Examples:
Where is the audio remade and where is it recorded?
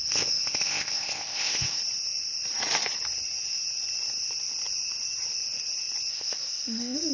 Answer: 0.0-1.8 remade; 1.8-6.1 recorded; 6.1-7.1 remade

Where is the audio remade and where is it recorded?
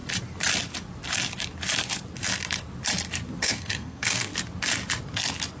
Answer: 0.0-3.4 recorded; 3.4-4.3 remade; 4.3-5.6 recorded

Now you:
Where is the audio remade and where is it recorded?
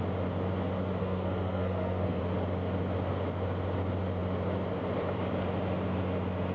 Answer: 0.0-1.0 recorded; 1.0-2.2 remade; 2.2-6.5 recorded